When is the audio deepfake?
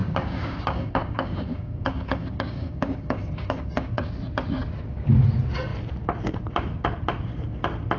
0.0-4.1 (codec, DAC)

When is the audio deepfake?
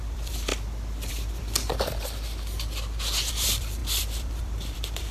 0.0-0.5 (vocoder, BigVGAN v2); 1.1-1.6; 3.3-5.1